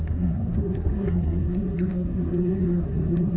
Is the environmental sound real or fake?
fake